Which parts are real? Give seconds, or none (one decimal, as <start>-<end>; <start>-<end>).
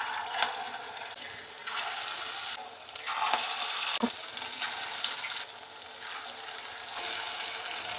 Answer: 0.0-8.0